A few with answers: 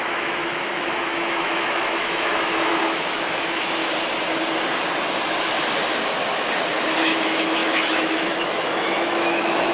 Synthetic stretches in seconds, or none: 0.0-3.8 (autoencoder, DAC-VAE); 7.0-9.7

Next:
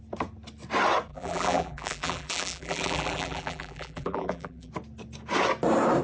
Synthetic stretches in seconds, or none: 1.1-4.7 (vocoder, BigVGAN v2)

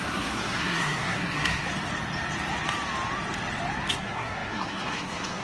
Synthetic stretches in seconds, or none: 0.0-1.7 (codec, SNAC); 3.9-5.4

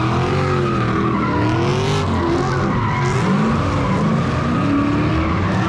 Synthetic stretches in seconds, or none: none

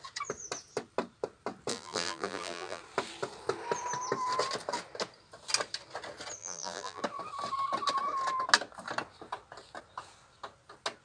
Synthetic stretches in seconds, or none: 1.7-2.8 (vocoder, BigVGAN v2); 6.4-7.0

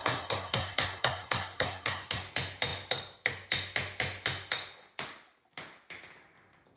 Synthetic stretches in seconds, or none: 0.0-2.2 (codec, SNAC)